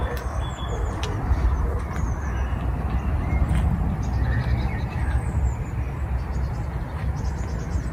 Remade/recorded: recorded